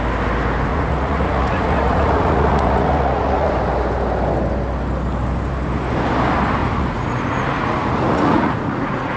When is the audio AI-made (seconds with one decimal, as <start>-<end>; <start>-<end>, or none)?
0.7-3.5; 6.6-9.2